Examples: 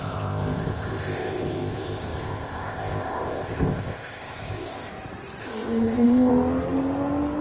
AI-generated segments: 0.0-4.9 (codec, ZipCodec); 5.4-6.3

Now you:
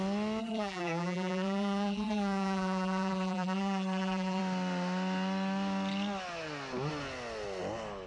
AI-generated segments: 0.4-4.4 (vocoder, BigVGAN v2)

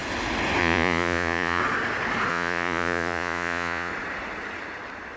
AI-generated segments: 0.6-1.6 (vocoder, Vocos); 2.3-3.9